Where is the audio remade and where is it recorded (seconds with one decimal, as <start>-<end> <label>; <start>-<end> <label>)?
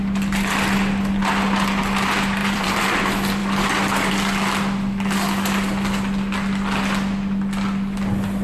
0.0-2.4 recorded; 2.4-3.0 remade; 3.0-8.4 recorded